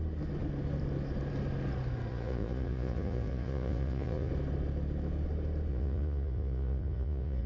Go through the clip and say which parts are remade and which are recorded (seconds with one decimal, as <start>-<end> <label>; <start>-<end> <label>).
0.0-2.1 recorded; 2.1-4.3 remade; 4.3-5.7 recorded; 5.7-7.5 remade